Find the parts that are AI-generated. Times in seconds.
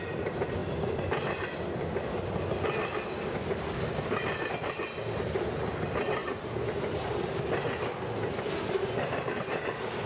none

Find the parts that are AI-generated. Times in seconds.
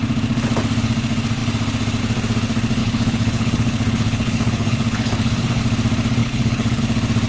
2.8-5.6 (codec, HILCodec); 6.2-6.8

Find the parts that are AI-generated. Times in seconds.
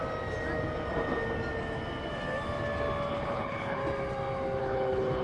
3.1-3.8 (codec, HILCodec); 4.6-5.2